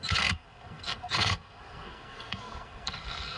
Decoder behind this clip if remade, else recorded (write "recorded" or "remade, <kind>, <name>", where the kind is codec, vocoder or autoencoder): remade, codec, SNAC